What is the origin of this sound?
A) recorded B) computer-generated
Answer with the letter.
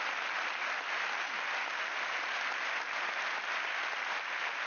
A